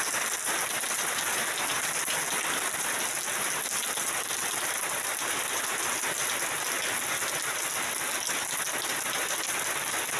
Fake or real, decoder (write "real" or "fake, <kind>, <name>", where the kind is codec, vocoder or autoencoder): real